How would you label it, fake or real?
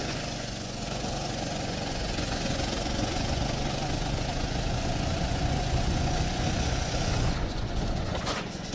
fake